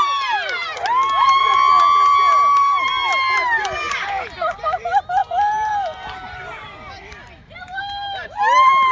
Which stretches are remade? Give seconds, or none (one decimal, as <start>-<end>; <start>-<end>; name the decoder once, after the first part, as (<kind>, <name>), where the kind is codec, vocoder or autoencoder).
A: 2.3-2.9 (vocoder, BigVGAN v2); 5.2-5.7